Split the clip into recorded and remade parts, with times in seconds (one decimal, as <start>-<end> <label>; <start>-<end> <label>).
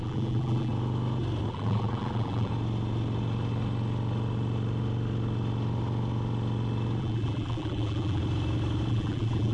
0.0-0.7 remade; 0.7-1.5 recorded; 1.5-2.5 remade; 2.5-7.0 recorded; 7.0-8.2 remade; 8.2-8.9 recorded; 8.9-9.5 remade